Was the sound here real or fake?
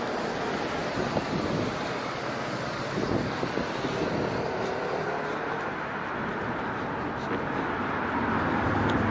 real